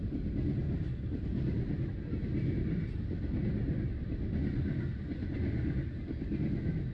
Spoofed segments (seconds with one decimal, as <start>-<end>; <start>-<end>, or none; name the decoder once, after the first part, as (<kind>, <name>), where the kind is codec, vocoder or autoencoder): none